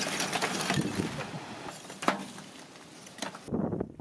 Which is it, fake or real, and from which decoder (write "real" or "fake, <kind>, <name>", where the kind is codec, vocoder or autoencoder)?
real